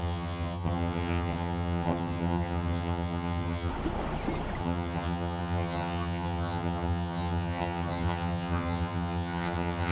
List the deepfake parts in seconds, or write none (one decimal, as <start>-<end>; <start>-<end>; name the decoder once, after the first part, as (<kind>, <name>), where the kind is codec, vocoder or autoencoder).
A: 0.0-3.7 (vocoder, HiFi-GAN); 4.6-9.9